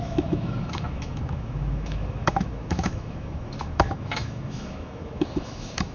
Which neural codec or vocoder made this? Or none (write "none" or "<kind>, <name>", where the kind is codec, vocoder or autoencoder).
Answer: autoencoder, DAC-VAE